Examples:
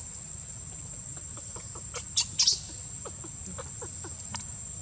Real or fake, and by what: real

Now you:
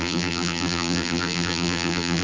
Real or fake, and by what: fake, vocoder, BigVGAN v2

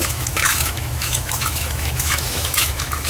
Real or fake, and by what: fake, autoencoder, DAC-VAE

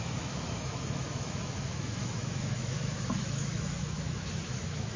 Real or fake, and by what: fake, autoencoder, DAC-VAE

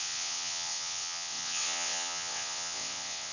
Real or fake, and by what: fake, vocoder, WaveNeXt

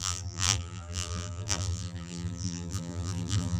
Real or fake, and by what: fake, vocoder, BigVGAN v2